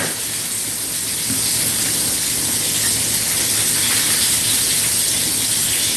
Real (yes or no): yes